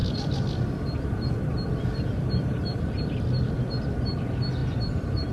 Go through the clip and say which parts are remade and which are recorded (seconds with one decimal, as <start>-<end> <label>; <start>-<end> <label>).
0.0-2.8 remade; 2.8-5.3 recorded